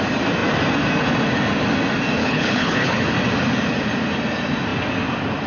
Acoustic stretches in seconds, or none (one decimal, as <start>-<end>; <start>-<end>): 0.0-2.2; 3.0-5.5